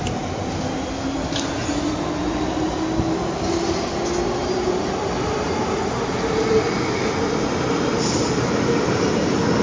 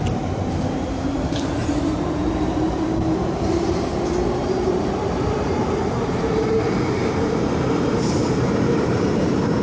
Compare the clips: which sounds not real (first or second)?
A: second